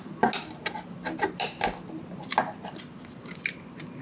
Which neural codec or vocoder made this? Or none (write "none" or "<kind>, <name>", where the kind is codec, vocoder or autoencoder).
none